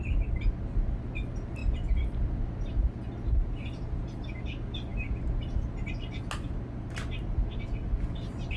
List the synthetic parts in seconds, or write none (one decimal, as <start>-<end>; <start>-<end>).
none